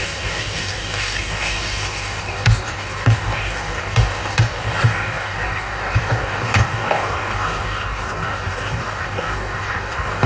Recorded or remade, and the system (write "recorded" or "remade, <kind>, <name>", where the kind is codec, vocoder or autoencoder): remade, codec, DAC